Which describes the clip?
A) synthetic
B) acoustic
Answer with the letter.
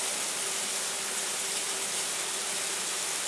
B